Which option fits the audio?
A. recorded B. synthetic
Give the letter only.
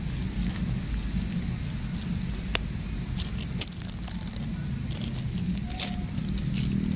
A